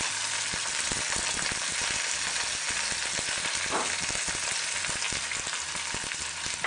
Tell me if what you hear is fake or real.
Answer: real